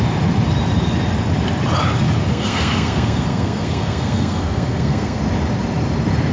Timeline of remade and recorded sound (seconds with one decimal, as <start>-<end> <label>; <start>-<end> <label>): 0.0-2.3 recorded; 2.3-5.2 remade; 5.2-6.3 recorded